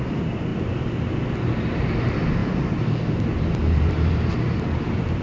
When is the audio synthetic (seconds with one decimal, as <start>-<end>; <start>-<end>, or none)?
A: 2.4-5.2